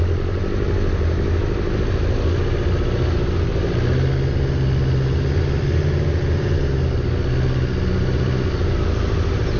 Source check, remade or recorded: recorded